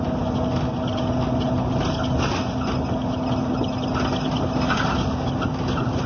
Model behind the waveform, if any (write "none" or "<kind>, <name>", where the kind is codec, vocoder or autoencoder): none